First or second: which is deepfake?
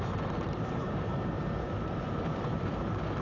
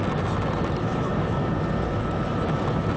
first